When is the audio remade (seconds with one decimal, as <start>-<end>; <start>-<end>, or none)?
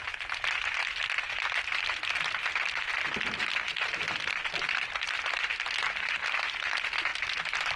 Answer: none